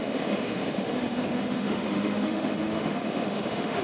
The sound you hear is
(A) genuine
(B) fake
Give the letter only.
B